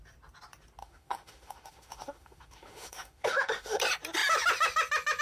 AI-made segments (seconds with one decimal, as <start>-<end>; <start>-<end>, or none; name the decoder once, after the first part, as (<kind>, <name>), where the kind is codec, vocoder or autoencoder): 0.8-3.8 (autoencoder, DAC-VAE)